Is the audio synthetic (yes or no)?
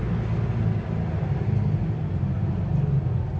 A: no